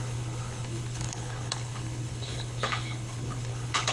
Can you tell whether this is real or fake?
fake